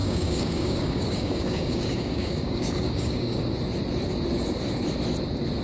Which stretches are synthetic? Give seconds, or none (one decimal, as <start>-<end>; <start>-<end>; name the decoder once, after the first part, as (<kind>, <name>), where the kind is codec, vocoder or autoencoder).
0.0-3.4 (codec, DAC)